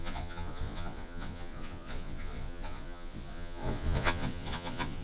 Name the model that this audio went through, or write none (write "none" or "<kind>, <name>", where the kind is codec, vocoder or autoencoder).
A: vocoder, Vocos